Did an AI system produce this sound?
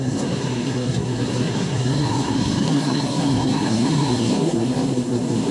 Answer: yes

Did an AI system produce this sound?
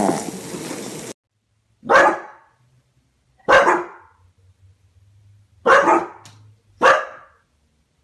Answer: no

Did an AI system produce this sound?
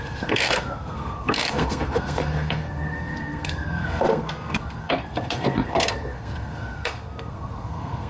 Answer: yes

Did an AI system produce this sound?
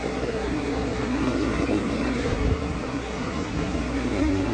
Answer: yes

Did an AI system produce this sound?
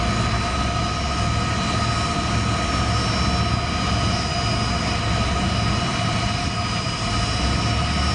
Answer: no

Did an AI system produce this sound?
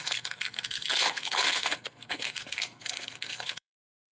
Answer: yes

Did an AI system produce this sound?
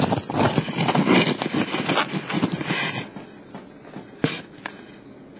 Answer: no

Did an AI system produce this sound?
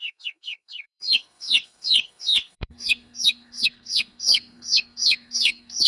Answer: yes